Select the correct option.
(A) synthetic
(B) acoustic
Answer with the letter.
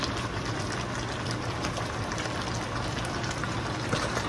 B